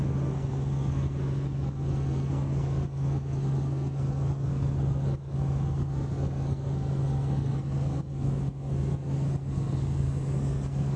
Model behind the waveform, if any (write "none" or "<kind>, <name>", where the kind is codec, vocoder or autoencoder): codec, SNAC